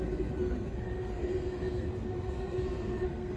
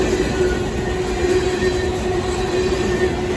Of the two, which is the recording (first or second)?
second